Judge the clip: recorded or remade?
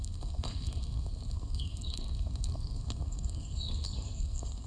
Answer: remade